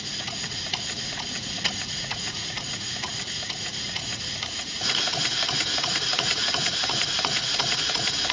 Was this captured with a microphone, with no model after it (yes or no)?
no